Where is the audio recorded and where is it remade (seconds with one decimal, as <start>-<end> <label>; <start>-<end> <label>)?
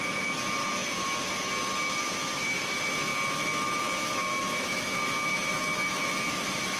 0.0-6.8 remade